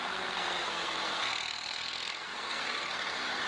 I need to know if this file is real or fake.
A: fake